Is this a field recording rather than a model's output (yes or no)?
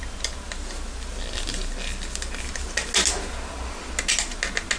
yes